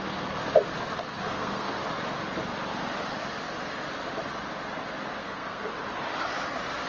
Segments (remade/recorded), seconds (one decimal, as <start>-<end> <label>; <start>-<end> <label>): 0.0-1.1 recorded; 1.1-1.8 remade; 1.8-5.2 recorded; 5.2-5.7 remade; 5.7-6.9 recorded